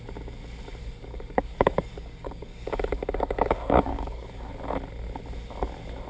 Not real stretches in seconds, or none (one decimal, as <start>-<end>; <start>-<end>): 0.8-4.5

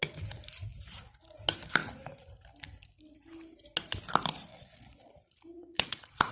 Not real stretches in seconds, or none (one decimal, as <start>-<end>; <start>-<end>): 4.5-5.1; 5.5-6.3

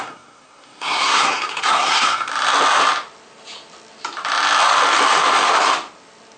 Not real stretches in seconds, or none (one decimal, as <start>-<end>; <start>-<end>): 0.0-2.3

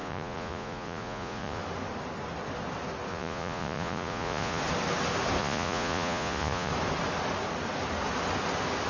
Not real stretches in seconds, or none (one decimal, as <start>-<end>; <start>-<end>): 0.0-1.6; 3.1-4.6; 5.4-6.7

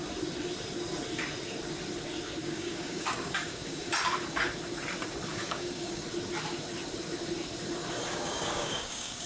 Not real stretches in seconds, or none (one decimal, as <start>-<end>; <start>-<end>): 2.4-3.9; 5.3-6.0; 8.1-9.3